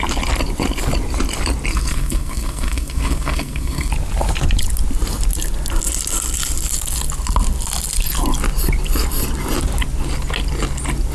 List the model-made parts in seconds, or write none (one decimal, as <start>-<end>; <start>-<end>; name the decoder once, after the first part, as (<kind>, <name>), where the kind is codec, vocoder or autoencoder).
1.7-3.9 (codec, SNAC)

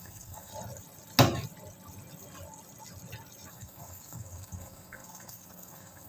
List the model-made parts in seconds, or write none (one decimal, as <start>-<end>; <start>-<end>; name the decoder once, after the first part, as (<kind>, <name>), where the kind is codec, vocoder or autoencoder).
0.0-0.5 (codec, SNAC); 3.5-6.1